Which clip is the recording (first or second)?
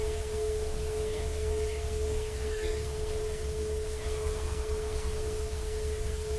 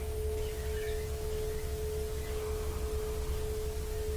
second